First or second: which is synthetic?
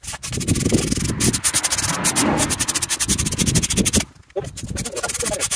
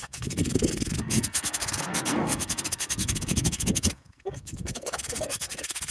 second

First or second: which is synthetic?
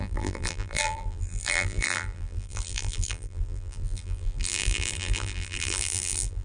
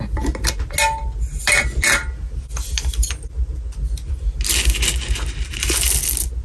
first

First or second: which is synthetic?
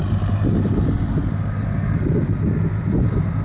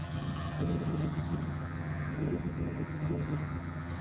second